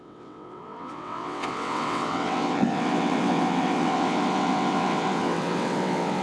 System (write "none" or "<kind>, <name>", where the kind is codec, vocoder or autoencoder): vocoder, WaveNeXt